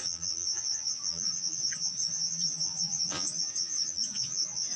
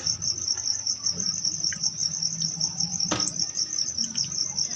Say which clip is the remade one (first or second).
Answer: first